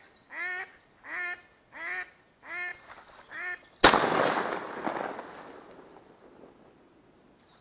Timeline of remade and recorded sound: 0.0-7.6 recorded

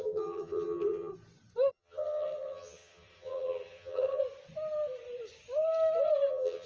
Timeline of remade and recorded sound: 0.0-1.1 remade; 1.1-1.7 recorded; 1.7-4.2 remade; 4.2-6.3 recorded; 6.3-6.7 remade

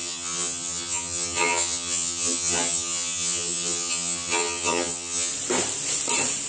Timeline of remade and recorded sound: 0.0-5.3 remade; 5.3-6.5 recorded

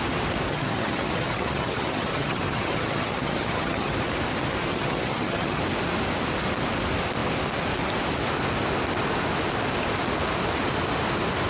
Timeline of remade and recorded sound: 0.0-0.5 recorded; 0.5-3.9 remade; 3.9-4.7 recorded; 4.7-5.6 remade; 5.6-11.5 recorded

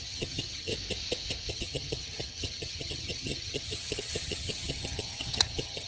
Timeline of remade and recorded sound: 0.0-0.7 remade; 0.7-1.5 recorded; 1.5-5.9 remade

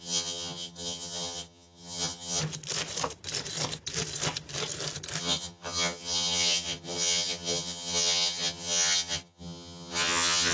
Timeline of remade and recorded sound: 0.0-2.4 remade; 2.4-5.2 recorded; 5.2-10.5 remade

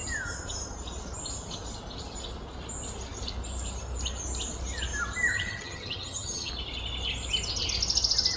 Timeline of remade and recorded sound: 0.0-5.3 recorded; 5.3-6.5 remade; 6.5-8.4 recorded

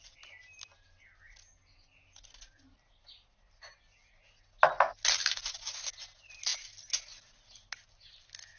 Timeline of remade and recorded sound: 0.0-8.6 recorded